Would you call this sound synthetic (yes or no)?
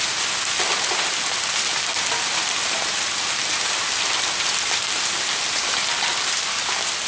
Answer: no